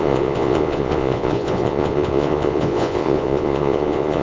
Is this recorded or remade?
remade